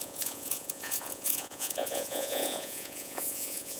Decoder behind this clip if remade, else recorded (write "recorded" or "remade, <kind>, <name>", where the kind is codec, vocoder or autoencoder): remade, vocoder, Vocos